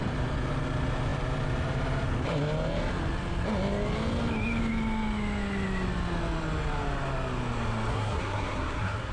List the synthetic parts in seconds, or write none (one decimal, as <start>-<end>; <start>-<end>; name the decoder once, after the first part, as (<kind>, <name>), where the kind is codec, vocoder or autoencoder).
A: 7.9-9.1 (codec, SNAC)